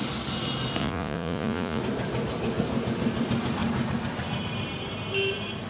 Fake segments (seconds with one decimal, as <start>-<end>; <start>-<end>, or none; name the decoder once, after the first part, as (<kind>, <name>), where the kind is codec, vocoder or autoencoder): 0.8-1.8 (vocoder, Vocos)